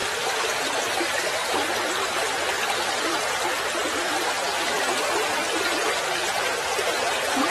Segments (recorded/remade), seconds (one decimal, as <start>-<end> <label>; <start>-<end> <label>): 0.0-0.8 remade; 0.8-3.8 recorded; 3.8-4.9 remade; 4.9-5.4 recorded; 5.4-6.0 remade; 6.0-7.5 recorded